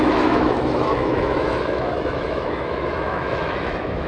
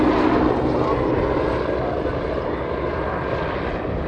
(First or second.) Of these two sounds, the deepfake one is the first